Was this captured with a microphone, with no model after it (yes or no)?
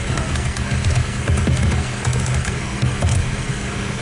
no